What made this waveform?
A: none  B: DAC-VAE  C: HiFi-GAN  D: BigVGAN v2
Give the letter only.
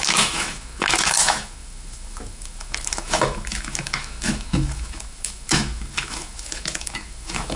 B